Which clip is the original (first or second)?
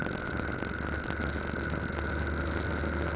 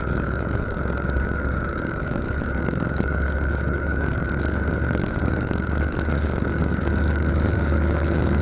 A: first